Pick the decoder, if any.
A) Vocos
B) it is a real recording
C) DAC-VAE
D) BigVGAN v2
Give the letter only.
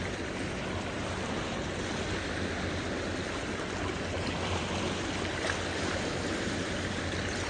B